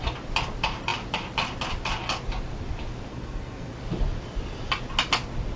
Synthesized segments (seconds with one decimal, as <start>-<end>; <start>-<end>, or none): 3.1-3.7